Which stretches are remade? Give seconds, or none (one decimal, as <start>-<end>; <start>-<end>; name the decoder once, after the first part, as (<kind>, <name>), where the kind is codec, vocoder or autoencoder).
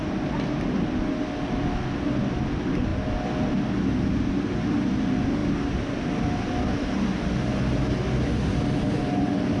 none